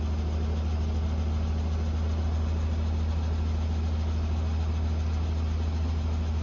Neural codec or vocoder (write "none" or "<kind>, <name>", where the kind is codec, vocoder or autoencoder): none